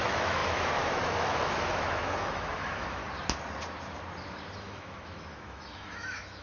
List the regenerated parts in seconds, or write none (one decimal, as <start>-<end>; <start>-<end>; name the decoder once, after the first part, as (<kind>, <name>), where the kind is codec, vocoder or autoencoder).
0.0-3.0 (autoencoder, DAC-VAE); 4.6-6.4

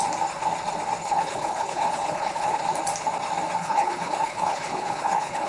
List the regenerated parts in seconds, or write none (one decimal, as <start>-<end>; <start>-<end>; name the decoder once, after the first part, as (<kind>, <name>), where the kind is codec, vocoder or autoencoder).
1.0-2.6 (codec, HILCodec); 3.6-5.5

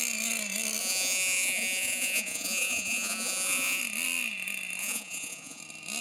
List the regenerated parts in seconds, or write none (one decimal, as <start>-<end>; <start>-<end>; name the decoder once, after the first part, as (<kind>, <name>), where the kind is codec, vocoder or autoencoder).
0.8-3.8 (vocoder, Vocos); 4.8-5.6

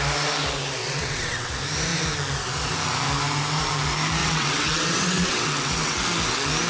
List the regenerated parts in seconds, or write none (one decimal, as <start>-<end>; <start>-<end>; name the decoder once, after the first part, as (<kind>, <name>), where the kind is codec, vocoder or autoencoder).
0.8-1.5 (vocoder, WaveNeXt); 4.2-6.0

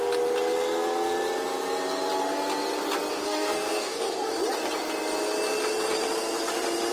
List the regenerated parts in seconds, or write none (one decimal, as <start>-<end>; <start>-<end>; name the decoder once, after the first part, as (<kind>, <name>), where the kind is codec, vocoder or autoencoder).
3.1-4.3 (codec, DAC)

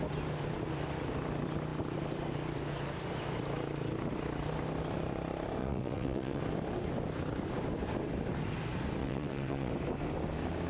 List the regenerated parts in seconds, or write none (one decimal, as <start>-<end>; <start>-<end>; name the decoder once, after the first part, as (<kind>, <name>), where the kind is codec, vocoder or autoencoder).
5.6-6.4 (vocoder, WaveNeXt); 9.0-9.7